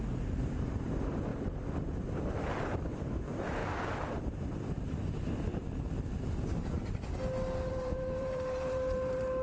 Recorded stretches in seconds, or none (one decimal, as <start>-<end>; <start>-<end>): 3.6-4.2; 5.5-7.7